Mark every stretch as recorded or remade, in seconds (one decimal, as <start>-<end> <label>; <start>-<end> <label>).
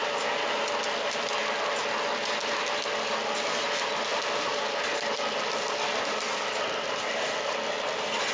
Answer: 0.0-8.3 recorded